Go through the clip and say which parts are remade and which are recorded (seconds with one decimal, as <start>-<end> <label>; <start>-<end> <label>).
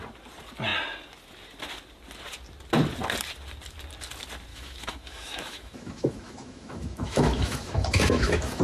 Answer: 0.0-4.5 recorded; 4.5-8.6 remade